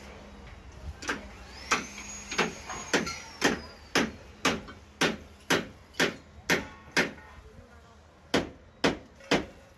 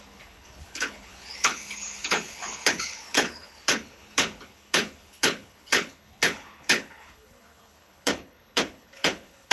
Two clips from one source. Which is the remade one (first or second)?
second